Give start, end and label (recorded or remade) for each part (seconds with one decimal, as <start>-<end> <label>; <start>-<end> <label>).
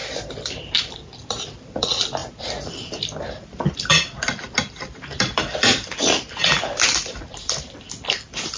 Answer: 0.0-8.6 remade